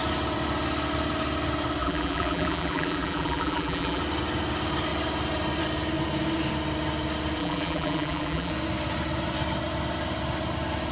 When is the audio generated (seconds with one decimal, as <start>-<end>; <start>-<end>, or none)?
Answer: 1.8-4.0; 7.4-8.5